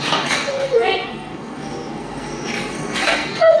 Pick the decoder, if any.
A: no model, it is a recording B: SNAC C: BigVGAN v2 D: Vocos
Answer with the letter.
B